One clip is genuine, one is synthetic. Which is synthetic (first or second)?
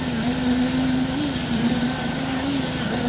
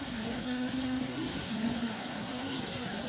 second